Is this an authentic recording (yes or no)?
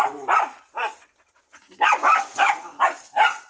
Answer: yes